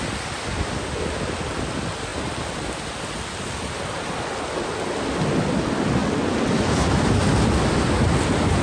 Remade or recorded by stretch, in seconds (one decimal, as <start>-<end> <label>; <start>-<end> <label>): 0.0-8.6 recorded